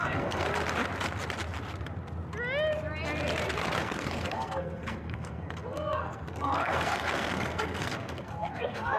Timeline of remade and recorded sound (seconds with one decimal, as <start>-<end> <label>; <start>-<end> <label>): 0.0-0.5 remade; 0.5-3.8 recorded; 3.8-9.0 remade